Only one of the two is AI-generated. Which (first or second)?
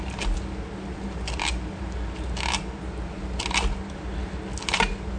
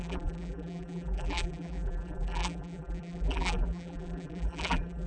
second